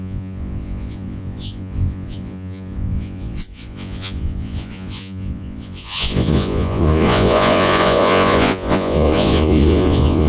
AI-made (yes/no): yes